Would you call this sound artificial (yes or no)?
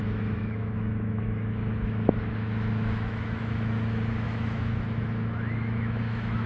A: yes